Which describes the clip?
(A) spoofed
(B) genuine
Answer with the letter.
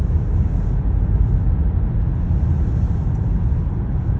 B